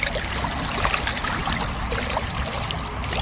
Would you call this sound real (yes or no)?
yes